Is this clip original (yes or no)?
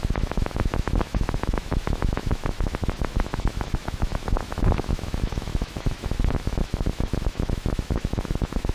no